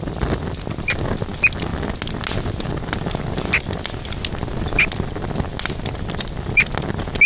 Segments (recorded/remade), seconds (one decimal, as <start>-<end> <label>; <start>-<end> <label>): 0.0-7.3 recorded